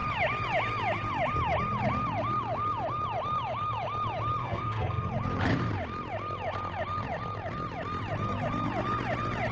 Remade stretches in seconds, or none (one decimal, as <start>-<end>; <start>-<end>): 4.4-5.1